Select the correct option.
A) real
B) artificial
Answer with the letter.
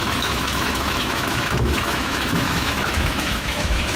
B